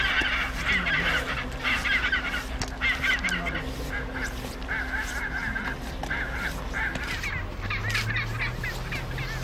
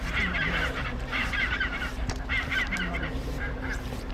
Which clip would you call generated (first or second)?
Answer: second